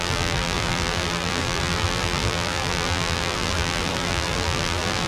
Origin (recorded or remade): remade